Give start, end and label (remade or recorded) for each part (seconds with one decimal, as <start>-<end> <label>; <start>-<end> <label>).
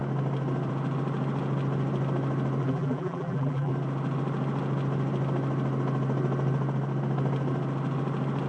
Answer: 0.0-2.6 recorded; 2.6-3.7 remade; 3.7-8.5 recorded